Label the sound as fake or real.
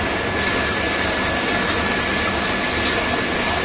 real